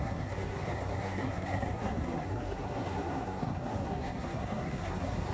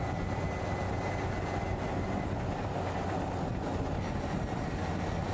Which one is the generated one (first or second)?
first